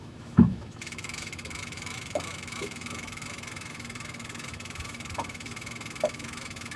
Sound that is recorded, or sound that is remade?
remade